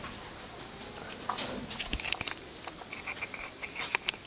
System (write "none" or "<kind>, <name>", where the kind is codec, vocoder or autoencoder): none